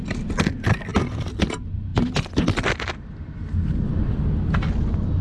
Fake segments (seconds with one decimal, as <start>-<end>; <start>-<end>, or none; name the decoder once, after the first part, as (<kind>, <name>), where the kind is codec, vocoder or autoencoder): 0.9-1.4 (vocoder, BigVGAN v2)